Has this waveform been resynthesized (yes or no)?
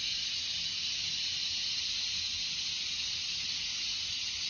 no